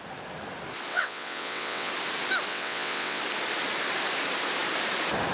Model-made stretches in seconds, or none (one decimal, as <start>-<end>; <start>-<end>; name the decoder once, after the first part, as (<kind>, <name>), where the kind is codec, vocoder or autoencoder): 0.9-1.9 (vocoder, WaveNeXt); 2.5-3.2